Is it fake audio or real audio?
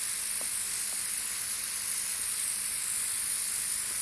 real